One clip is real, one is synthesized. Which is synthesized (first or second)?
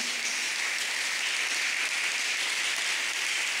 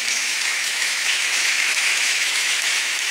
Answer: second